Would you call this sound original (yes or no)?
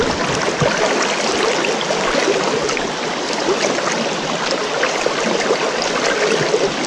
yes